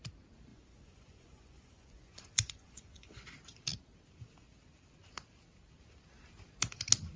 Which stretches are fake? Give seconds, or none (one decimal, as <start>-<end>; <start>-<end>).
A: 0.5-3.2

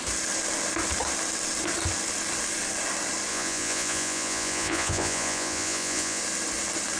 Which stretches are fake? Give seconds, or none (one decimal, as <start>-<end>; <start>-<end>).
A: 3.3-6.2

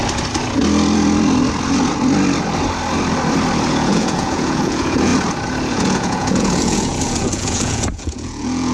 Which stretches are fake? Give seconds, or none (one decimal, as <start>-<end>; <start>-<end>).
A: 3.7-5.1; 5.7-8.7

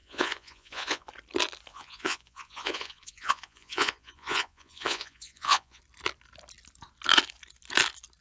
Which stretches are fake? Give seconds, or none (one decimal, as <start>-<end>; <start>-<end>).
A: 0.0-1.1; 1.7-5.8

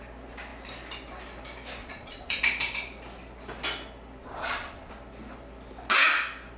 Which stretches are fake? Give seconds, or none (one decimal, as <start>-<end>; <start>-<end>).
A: 1.8-2.4; 4.2-4.9